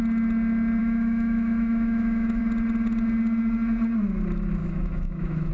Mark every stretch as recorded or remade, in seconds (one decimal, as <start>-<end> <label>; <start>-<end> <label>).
0.0-0.8 recorded; 0.8-2.4 remade; 2.4-4.6 recorded; 4.6-5.5 remade